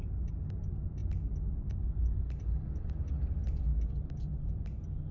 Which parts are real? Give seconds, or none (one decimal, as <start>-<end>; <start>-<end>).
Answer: 0.0-5.1